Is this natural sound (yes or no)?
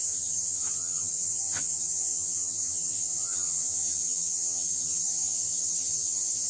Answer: no